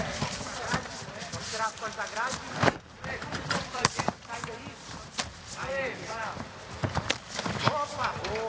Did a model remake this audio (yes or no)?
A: yes